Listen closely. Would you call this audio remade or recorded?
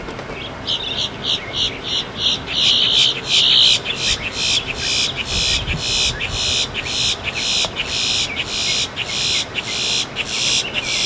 recorded